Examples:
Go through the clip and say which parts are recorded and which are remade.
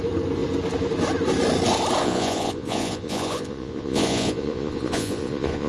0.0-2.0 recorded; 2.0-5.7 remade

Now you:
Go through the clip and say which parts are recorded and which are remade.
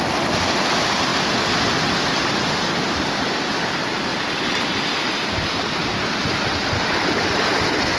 0.0-4.1 recorded; 4.1-6.7 remade; 6.7-8.0 recorded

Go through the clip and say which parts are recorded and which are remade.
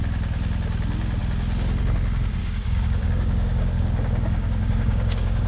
0.0-2.4 recorded; 2.4-5.5 remade